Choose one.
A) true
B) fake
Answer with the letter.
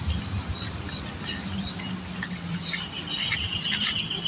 A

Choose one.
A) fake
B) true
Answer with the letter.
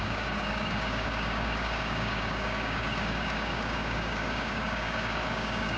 A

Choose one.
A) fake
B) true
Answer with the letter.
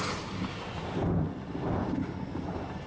B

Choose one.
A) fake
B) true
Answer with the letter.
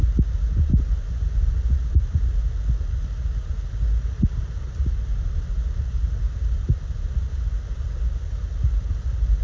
B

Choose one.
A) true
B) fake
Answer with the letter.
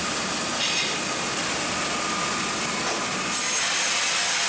A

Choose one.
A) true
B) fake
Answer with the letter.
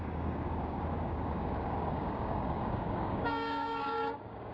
B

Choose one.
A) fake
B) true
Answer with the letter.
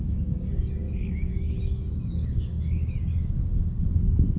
A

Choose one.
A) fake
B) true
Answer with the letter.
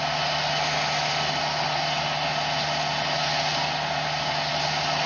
B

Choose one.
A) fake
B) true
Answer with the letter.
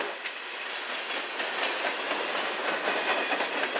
B